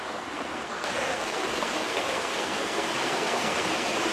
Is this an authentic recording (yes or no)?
no